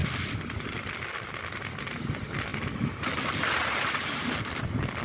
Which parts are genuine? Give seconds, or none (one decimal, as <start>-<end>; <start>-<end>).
0.0-5.0